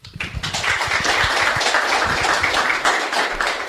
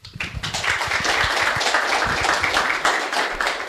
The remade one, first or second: first